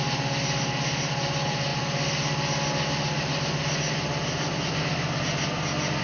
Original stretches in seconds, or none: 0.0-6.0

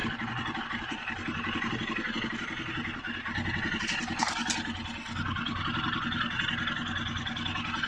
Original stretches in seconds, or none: 0.6-7.9

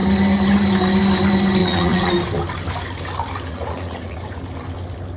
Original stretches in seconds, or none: 0.0-1.6; 2.1-3.5; 4.4-5.2

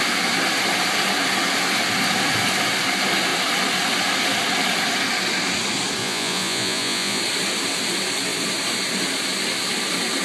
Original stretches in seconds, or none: 0.0-6.0; 7.2-10.2

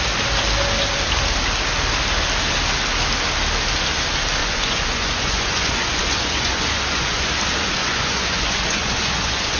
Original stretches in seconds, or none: 0.0-4.4; 7.3-7.8

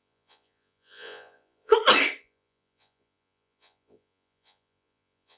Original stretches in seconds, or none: 1.7-2.2

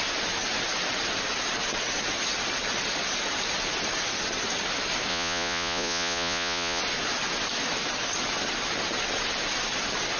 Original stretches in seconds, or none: 0.0-5.1; 6.8-10.2

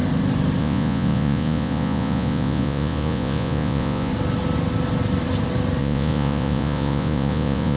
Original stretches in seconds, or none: 0.0-0.6; 4.1-5.8